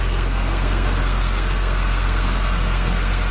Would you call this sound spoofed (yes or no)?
yes